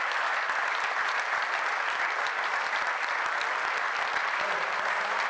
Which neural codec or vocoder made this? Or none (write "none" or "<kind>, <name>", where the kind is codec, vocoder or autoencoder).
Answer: vocoder, BigVGAN v2